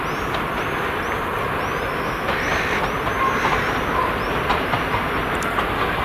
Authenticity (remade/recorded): recorded